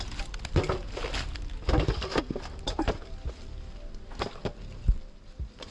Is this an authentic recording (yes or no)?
yes